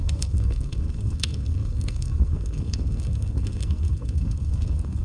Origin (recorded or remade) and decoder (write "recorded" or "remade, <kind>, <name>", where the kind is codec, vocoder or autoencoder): remade, codec, SNAC